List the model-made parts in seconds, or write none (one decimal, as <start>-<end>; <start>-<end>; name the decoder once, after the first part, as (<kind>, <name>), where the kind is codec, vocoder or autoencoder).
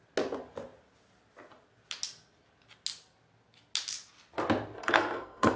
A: 4.8-5.6 (codec, SNAC)